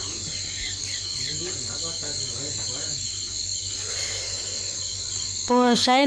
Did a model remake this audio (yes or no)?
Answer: yes